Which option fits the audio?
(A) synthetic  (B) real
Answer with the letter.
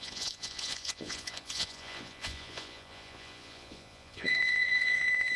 A